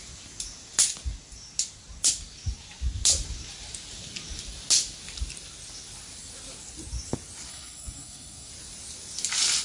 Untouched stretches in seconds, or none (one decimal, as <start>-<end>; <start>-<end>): 0.0-7.5; 8.5-9.6